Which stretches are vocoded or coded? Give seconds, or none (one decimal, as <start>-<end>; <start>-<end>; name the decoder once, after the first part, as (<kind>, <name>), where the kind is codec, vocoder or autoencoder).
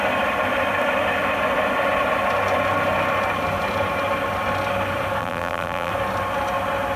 5.2-5.9 (vocoder, BigVGAN v2)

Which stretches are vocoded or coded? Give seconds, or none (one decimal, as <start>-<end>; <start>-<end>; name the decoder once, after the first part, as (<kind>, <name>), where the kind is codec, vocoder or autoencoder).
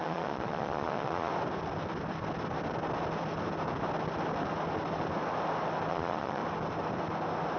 0.0-1.3 (vocoder, Vocos); 5.9-6.4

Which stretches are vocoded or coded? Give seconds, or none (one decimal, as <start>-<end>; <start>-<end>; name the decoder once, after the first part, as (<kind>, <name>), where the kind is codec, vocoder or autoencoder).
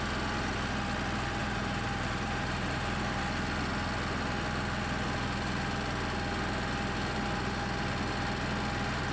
1.4-3.2 (vocoder, BigVGAN v2)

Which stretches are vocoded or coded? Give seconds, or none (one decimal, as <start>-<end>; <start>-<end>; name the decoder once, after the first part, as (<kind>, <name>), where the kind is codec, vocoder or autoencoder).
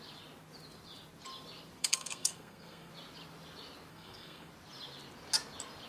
1.8-2.9 (codec, SNAC); 3.9-4.5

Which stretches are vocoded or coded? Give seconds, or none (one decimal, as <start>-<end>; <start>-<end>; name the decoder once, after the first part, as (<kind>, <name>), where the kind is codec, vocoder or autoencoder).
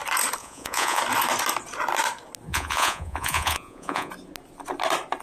0.4-1.0 (vocoder, Vocos); 2.5-4.1